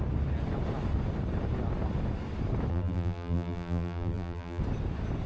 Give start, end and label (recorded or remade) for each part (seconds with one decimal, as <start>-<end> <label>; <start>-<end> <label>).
0.0-2.7 recorded; 2.7-4.6 remade; 4.6-5.3 recorded